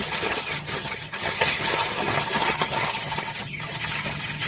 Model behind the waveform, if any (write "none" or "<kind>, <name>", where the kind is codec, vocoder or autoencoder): vocoder, HiFi-GAN